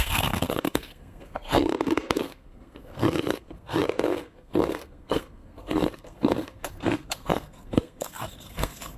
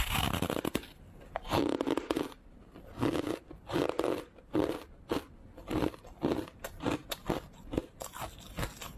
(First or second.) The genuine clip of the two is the second